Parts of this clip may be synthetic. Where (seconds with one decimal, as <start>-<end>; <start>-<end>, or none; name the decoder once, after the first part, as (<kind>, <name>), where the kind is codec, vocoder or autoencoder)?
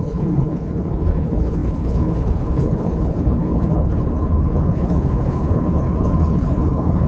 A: 0.0-7.1 (codec, HILCodec)